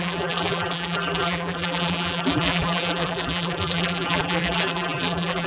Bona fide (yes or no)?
no